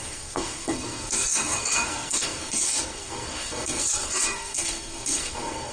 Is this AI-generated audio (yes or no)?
yes